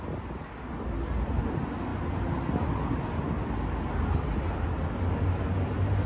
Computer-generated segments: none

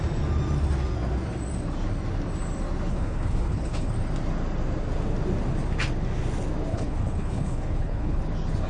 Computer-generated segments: 2.9-3.9 (codec, HILCodec); 6.7-8.2